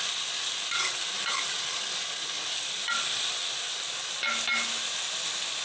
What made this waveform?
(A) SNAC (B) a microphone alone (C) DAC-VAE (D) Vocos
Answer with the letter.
B